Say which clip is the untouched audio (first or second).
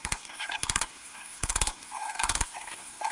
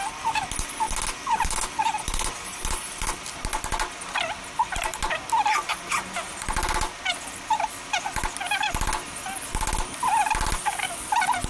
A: second